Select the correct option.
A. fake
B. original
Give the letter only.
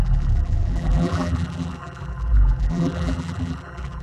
A